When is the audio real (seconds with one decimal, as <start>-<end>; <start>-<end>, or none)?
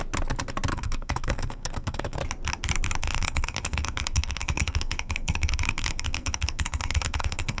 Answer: 0.0-0.7; 2.2-3.0